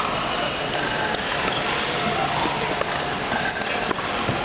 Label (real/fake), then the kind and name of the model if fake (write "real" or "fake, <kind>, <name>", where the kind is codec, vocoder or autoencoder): real